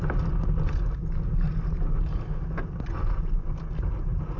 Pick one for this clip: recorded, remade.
recorded